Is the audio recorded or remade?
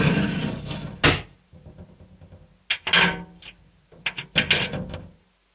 recorded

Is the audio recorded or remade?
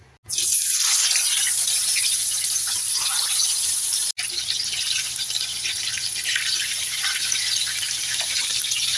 recorded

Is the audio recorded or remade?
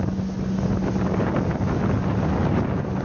recorded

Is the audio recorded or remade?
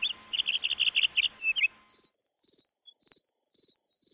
recorded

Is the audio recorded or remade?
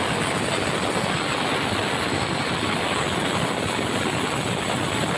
recorded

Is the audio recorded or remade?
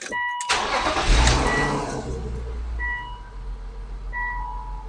recorded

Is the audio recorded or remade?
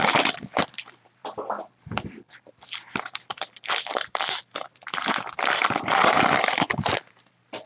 remade